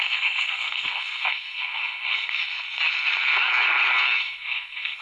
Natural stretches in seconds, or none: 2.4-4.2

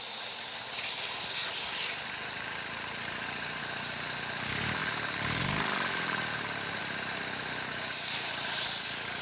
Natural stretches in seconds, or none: 0.0-9.2

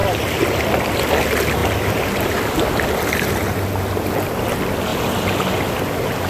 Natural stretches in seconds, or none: 1.1-6.3

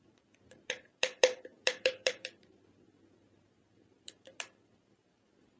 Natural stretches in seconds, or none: none

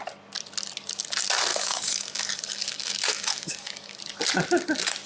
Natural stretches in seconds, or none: 0.0-1.5; 4.0-5.1

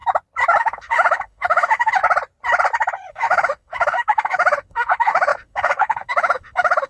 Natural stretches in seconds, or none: 0.0-0.6; 2.0-3.1